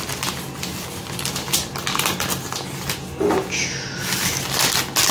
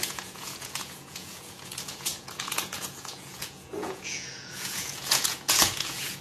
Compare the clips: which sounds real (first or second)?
first